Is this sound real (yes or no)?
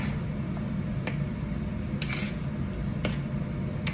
yes